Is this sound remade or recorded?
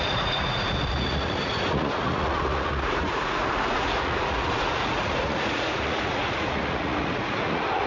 remade